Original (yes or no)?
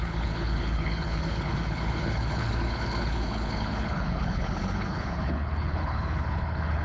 no